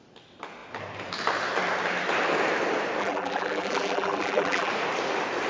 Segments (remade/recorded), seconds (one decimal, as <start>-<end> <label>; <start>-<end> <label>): 0.0-3.0 recorded; 3.0-4.7 remade; 4.7-5.5 recorded

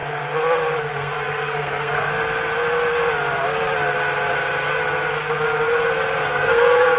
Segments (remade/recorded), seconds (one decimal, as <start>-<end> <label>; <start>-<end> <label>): 0.0-0.8 recorded; 0.8-2.1 remade; 2.1-6.2 recorded; 6.2-7.0 remade